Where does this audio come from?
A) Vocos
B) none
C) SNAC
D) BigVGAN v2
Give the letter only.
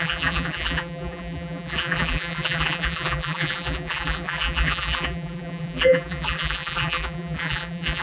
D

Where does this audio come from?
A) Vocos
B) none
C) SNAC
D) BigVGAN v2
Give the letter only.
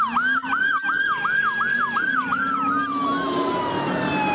B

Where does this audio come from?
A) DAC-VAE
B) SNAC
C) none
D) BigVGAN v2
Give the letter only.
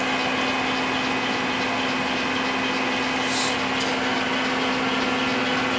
C